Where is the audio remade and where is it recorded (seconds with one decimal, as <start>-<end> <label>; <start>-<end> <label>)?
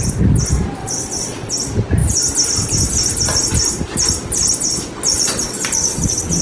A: 0.0-0.8 recorded; 0.8-1.5 remade; 1.5-5.1 recorded; 5.1-6.4 remade